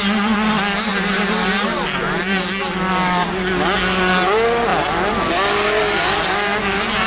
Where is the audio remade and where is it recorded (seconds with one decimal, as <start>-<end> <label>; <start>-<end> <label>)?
0.0-0.9 recorded; 0.9-2.5 remade; 2.5-7.1 recorded